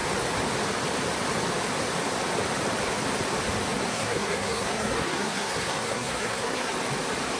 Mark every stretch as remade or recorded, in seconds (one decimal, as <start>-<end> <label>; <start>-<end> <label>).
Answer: 0.0-3.9 recorded; 3.9-6.7 remade; 6.7-7.4 recorded